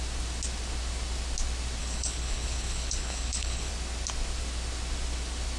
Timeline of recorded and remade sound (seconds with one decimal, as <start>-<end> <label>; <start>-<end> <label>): 0.0-1.8 recorded; 1.8-3.7 remade; 3.7-5.6 recorded